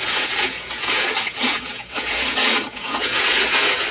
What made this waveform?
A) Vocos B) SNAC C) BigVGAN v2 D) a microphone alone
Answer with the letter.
A